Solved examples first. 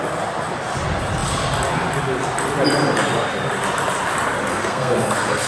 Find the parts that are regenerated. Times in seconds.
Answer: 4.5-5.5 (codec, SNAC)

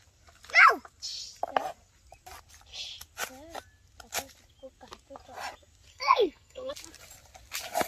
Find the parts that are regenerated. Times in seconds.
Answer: 5.9-6.7 (codec, SNAC)